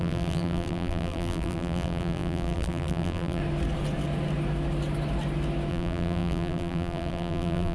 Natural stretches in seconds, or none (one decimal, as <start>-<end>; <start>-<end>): 3.4-5.7